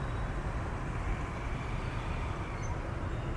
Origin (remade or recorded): recorded